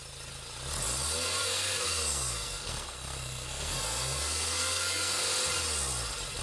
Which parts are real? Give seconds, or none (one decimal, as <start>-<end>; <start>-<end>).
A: 0.0-1.4; 5.2-6.4